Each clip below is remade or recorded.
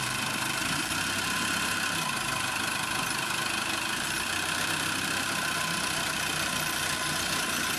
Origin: remade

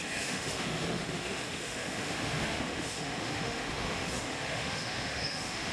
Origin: remade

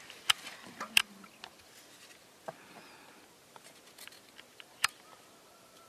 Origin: recorded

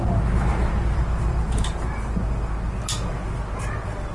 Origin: recorded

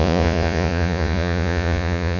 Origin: remade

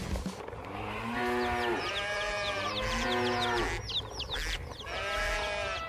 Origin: recorded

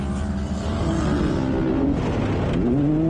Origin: recorded